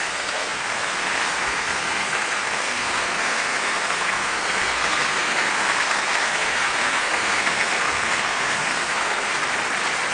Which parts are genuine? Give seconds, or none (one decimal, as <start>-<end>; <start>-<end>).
9.3-10.1